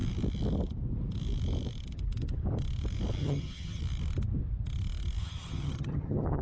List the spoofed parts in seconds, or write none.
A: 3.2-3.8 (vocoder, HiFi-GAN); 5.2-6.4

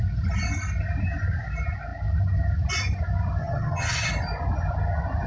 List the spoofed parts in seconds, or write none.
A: 3.4-4.1 (vocoder, HiFi-GAN)

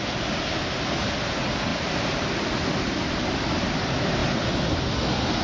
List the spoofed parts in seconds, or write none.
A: none

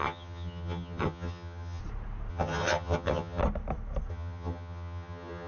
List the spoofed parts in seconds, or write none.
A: 0.0-1.8 (vocoder, HiFi-GAN); 2.3-3.4; 4.1-5.5

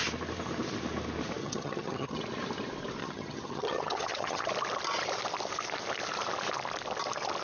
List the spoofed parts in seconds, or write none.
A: 1.4-2.2 (vocoder, HiFi-GAN); 3.0-4.5

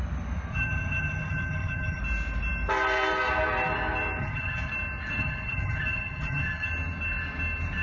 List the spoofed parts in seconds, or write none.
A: 0.5-2.0 (vocoder, HiFi-GAN); 4.2-4.7; 5.2-6.7

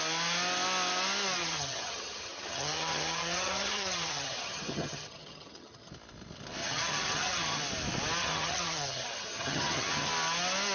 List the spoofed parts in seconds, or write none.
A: 1.4-5.9 (vocoder, HiFi-GAN); 6.6-7.6; 8.2-10.1

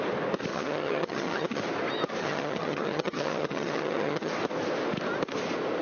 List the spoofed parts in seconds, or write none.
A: 0.5-1.6 (vocoder, HiFi-GAN); 2.2-4.3